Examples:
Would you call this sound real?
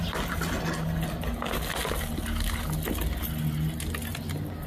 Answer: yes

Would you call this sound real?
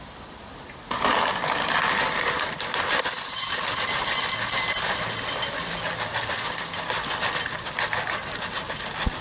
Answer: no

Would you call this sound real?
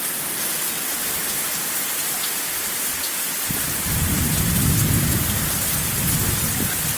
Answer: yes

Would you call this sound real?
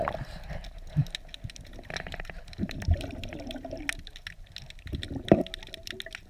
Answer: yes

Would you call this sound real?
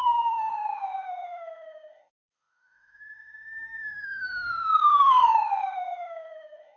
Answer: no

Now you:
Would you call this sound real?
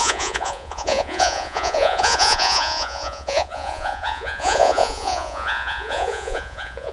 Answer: no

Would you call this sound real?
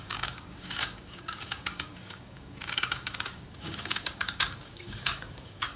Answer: no